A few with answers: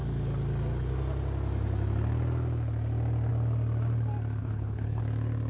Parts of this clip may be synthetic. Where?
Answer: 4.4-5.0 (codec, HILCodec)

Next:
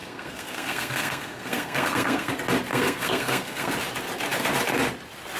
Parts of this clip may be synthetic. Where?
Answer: 0.0-2.3 (codec, SNAC); 2.7-3.7

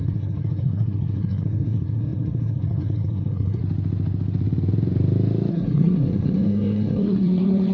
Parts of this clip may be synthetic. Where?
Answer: 0.0-3.6 (codec, SNAC); 5.5-7.7

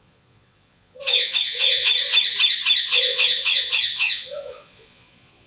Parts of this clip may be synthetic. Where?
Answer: 0.0-1.9 (vocoder, Vocos); 2.8-5.5

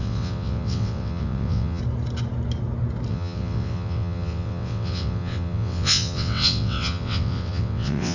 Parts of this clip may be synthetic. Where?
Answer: 0.0-1.8 (vocoder, WaveNeXt); 3.1-8.1

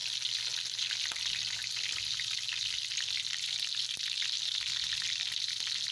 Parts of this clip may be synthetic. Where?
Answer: none